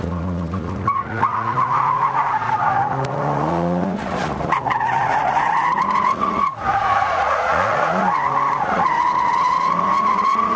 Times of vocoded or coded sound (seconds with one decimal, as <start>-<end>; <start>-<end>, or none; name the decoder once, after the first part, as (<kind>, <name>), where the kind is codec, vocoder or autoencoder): 0.0-10.6 (vocoder, Vocos)